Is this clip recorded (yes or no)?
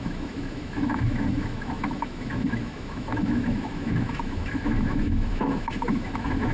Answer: no